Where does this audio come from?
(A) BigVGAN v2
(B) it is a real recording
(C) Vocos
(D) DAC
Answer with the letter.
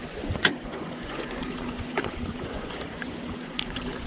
C